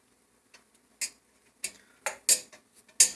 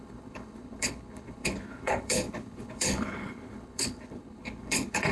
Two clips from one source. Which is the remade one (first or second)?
second